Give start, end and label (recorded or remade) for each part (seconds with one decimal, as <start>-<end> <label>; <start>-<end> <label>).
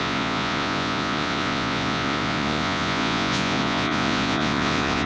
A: 0.0-5.1 remade